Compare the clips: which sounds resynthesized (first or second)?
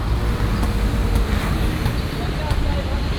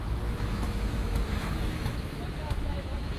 second